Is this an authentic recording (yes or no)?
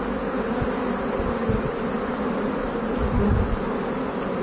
yes